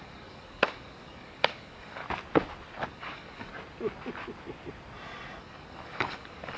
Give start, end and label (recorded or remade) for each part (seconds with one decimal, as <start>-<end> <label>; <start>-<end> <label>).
0.0-2.0 remade; 2.0-2.9 recorded; 2.9-3.5 remade; 3.5-5.4 recorded; 5.4-6.6 remade